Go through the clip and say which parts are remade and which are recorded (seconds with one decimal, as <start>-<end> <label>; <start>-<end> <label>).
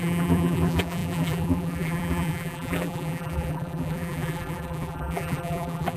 0.0-6.0 remade